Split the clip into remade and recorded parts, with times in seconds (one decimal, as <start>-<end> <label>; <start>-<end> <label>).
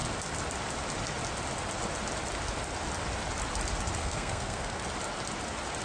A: 0.0-4.0 recorded; 4.0-4.8 remade; 4.8-5.8 recorded